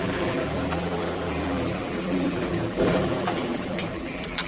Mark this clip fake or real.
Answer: fake